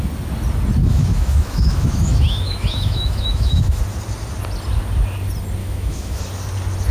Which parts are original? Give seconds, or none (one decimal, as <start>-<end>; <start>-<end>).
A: 0.0-0.8; 3.8-5.6; 6.2-6.9